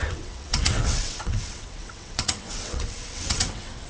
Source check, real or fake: fake